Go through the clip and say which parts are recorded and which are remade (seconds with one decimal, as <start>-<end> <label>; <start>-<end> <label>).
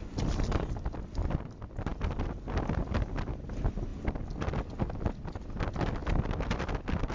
0.0-7.1 recorded